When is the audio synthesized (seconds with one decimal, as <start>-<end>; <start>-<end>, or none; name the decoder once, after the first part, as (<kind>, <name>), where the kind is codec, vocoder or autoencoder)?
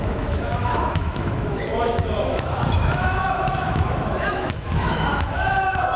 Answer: 0.0-1.7 (autoencoder, DAC-VAE); 2.2-6.0